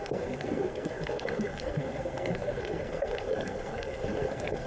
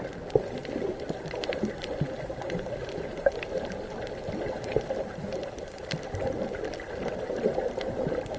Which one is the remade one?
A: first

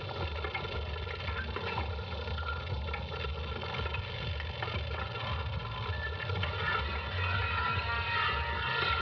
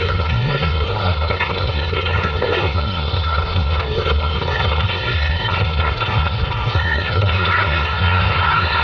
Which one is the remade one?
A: second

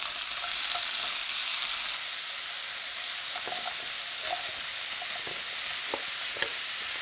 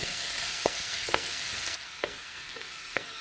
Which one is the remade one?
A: second